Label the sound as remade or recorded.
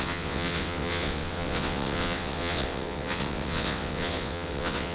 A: remade